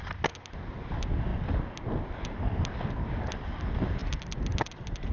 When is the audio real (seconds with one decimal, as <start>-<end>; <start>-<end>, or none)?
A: 0.0-5.1